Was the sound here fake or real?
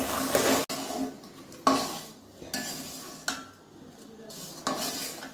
real